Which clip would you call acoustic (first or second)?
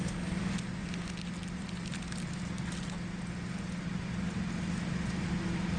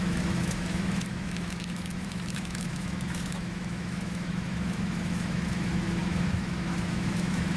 first